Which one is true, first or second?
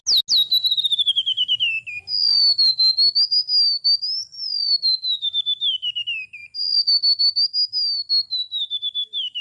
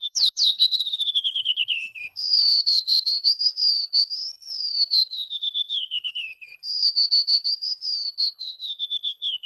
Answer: first